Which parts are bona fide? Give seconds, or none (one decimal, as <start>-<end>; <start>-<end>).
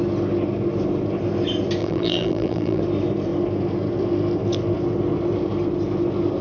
0.0-1.8; 2.8-6.4